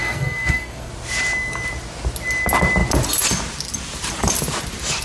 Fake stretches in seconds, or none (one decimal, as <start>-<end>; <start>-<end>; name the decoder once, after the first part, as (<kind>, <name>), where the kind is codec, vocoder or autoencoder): 0.0-0.9 (codec, SNAC)